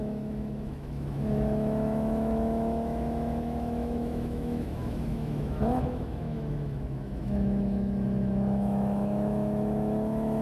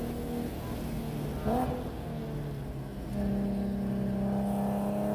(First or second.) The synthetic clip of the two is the first